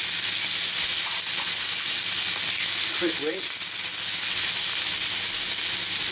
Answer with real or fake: real